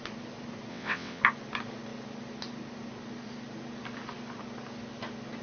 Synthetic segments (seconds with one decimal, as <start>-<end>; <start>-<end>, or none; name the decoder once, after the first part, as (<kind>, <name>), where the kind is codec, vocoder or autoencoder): 0.7-1.2 (vocoder, WaveNeXt)